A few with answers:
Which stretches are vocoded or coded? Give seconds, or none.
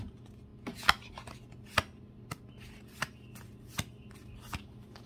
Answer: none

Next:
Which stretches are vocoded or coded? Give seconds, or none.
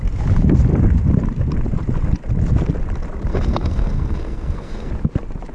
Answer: 3.3-4.9 (codec, SNAC)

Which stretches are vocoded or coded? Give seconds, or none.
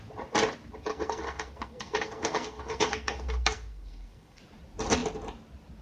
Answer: 0.9-4.4 (codec, SNAC)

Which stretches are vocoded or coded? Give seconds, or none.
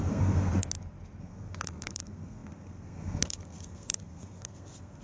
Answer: 0.0-0.6 (codec, SNAC); 1.2-5.0